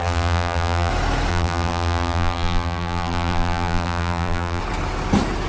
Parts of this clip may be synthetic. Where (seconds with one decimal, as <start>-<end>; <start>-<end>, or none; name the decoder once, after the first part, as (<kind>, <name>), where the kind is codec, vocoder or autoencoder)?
0.0-0.9 (vocoder, BigVGAN v2); 1.3-4.6

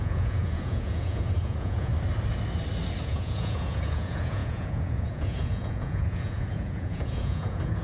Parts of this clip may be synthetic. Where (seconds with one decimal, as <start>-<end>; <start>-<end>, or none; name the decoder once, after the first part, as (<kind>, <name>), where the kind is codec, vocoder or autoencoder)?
0.0-1.9 (vocoder, Vocos); 3.0-7.8

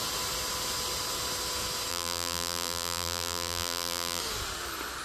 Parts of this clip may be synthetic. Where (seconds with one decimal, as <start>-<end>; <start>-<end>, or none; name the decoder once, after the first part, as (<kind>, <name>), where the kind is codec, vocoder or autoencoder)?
1.9-4.2 (vocoder, BigVGAN v2)

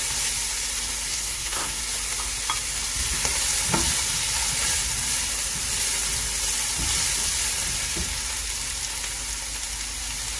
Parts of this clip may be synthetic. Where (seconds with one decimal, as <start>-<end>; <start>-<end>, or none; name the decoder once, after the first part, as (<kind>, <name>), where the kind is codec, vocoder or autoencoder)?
1.1-1.8 (codec, SNAC)